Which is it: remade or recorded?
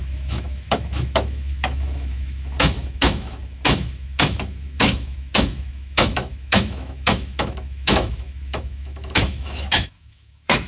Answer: remade